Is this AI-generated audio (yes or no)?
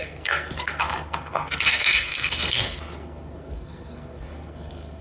yes